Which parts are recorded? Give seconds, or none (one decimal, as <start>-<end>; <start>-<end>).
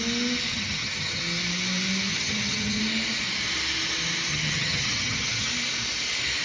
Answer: 0.0-0.5; 1.2-2.1; 2.8-4.3; 5.5-6.4